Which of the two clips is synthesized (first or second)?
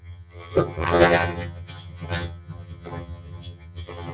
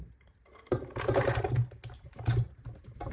first